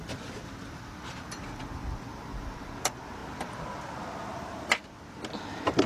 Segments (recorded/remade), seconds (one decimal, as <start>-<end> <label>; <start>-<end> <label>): 0.0-5.9 recorded